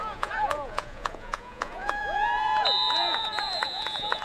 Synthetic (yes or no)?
yes